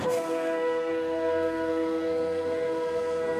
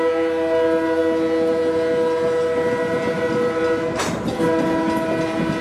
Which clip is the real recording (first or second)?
second